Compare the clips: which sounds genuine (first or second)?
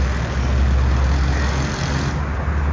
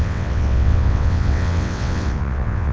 first